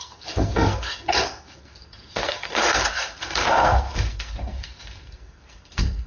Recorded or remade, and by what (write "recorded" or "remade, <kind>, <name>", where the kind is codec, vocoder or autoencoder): remade, codec, SNAC